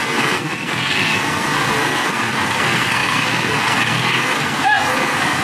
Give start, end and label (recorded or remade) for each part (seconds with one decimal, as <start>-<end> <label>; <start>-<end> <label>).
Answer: 0.0-5.4 remade